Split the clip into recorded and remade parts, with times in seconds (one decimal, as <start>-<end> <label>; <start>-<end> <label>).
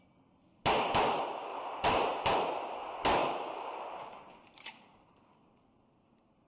0.0-1.5 recorded; 1.5-2.3 remade; 2.3-3.2 recorded; 3.2-6.5 remade